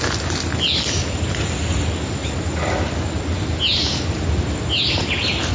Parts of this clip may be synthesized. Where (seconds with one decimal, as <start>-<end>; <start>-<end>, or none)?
none